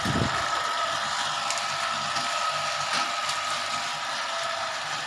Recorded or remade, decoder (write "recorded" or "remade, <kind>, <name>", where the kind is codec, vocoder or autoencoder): recorded